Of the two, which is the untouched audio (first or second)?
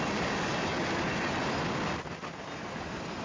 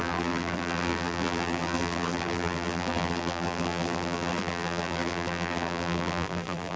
first